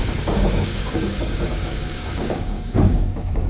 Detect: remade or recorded remade